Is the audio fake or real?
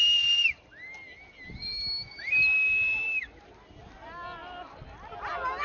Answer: real